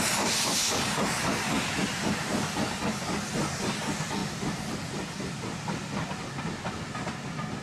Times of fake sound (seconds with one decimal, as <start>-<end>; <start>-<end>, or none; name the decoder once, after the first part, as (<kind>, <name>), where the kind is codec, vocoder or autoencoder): none